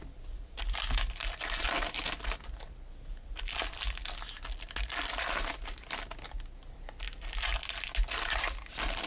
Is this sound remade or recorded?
recorded